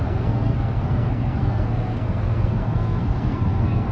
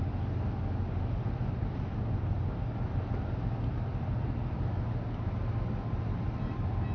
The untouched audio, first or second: second